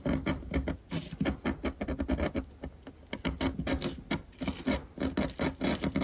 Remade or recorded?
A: recorded